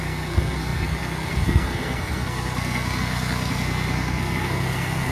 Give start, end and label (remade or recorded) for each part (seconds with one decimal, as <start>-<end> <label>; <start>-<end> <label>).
0.0-5.1 remade